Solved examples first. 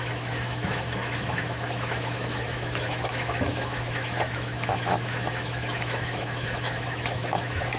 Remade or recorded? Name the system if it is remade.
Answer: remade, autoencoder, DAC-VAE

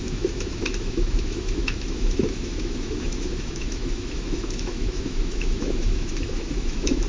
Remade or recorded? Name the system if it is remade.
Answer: remade, autoencoder, DAC-VAE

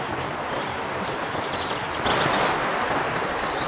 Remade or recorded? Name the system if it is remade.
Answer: recorded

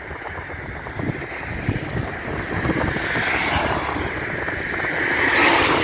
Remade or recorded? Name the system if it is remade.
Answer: recorded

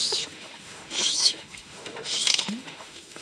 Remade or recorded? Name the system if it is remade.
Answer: remade, autoencoder, DAC-VAE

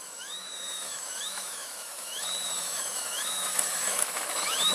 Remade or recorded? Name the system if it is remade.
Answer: remade, autoencoder, DAC-VAE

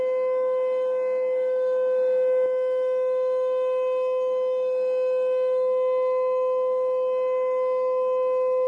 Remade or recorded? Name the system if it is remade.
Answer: remade, autoencoder, DAC-VAE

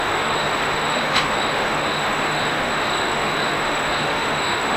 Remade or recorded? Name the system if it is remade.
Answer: remade, autoencoder, DAC-VAE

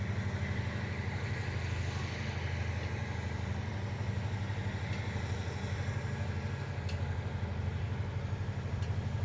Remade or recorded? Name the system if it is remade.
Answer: recorded